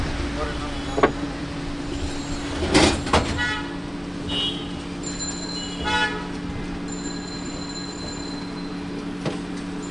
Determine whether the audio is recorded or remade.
recorded